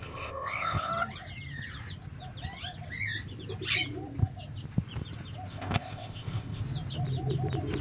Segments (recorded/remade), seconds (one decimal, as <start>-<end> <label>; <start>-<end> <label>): 0.0-0.9 remade; 0.9-5.5 recorded; 5.5-6.6 remade; 6.6-7.8 recorded